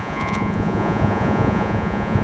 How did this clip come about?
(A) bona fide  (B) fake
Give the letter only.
B